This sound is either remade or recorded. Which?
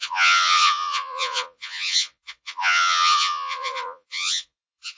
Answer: remade